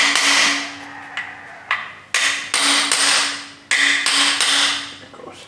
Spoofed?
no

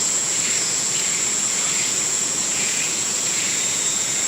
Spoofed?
yes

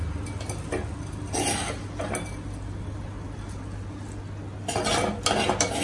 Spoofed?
no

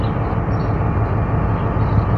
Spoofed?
no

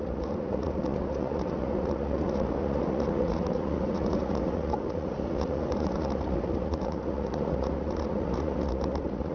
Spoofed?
yes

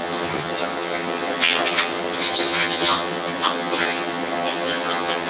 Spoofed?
yes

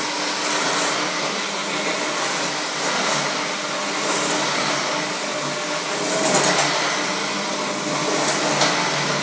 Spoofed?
no